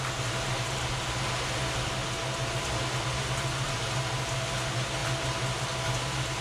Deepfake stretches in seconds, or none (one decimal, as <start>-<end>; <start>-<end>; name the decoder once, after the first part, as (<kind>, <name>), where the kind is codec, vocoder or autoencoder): none